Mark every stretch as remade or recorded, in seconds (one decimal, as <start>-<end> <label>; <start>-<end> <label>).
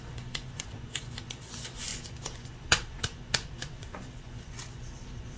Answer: 0.0-5.4 remade